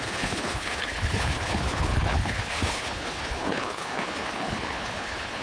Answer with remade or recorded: remade